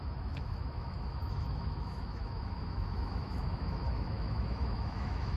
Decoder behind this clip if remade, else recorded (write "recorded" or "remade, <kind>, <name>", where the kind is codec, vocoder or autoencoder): remade, autoencoder, DAC-VAE